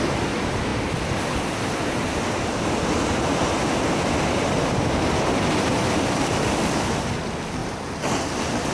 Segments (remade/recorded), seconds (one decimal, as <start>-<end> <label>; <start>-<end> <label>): 0.0-8.7 recorded